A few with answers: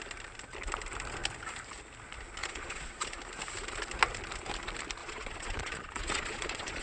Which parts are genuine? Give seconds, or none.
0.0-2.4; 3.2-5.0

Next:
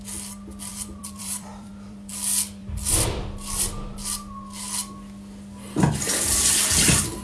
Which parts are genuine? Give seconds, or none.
0.0-0.7; 2.1-2.6; 4.0-7.2

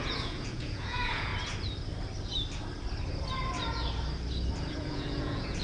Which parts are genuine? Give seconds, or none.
1.3-4.7

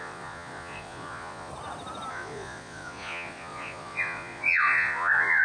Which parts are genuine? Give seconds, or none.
1.5-2.1

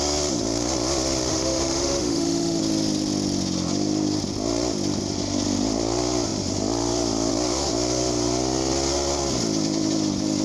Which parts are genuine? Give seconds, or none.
0.0-1.3; 2.6-10.4

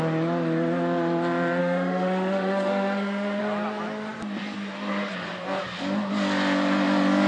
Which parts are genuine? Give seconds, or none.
0.0-1.6; 3.4-7.3

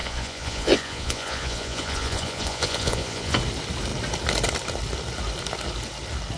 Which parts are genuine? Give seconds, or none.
3.4-6.4